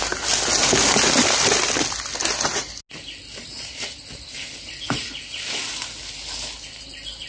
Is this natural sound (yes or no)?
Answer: yes